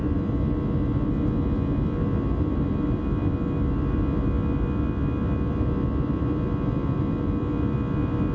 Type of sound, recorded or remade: recorded